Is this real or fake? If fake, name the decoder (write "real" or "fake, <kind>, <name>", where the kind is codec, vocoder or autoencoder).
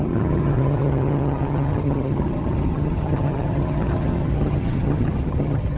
fake, vocoder, HiFi-GAN